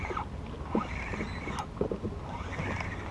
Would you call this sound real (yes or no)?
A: yes